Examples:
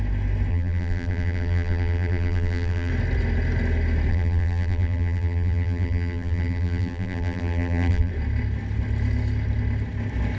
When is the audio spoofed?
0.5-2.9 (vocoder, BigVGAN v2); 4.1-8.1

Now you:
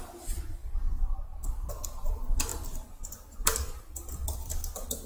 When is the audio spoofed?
0.0-0.6 (vocoder, BigVGAN v2); 1.7-5.1

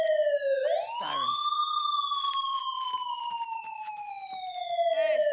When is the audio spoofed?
1.4-4.1 (vocoder, BigVGAN v2)

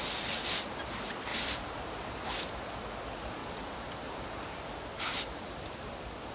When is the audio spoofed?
1.3-2.3 (vocoder, BigVGAN v2); 3.4-5.7

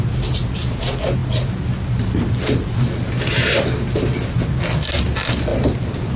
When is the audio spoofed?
1.2-3.7 (vocoder, BigVGAN v2); 5.5-6.2